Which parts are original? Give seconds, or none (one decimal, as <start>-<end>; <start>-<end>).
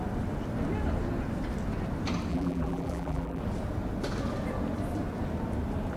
0.0-2.3; 3.4-6.0